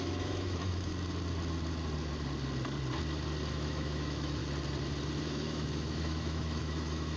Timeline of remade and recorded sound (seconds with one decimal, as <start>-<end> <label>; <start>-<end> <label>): 0.0-0.9 remade; 0.9-3.5 recorded; 3.5-4.4 remade; 4.4-5.2 recorded; 5.2-7.2 remade